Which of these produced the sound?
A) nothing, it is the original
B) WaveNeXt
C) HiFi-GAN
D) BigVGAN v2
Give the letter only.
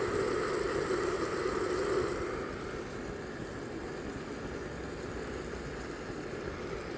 A